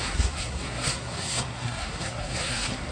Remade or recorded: remade